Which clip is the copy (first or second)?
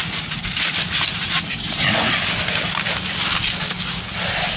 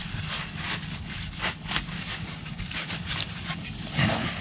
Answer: second